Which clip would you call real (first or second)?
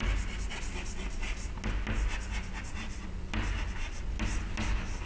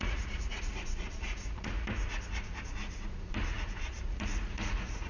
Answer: first